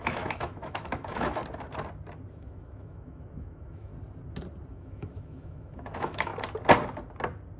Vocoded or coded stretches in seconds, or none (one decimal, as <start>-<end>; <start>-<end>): 0.0-1.4; 2.3-3.9; 4.7-6.3